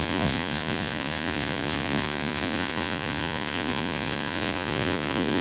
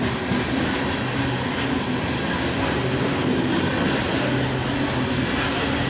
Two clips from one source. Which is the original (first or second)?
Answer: second